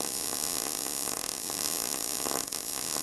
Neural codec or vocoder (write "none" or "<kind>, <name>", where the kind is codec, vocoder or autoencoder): none